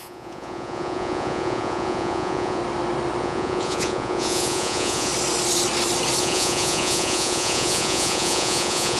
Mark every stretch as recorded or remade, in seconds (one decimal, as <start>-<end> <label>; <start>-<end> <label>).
0.0-2.6 remade; 2.6-3.2 recorded; 3.2-5.1 remade; 5.1-6.2 recorded; 6.2-9.0 remade